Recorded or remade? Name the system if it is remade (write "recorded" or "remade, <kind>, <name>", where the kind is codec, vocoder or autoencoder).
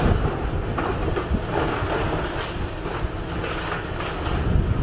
recorded